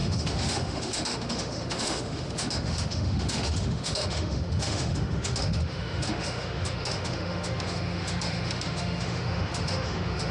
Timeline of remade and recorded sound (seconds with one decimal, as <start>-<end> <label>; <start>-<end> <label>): 0.0-10.3 remade